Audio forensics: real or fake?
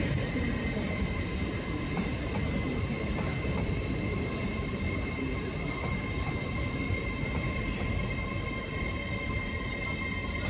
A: fake